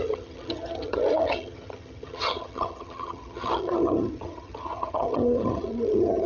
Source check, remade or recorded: remade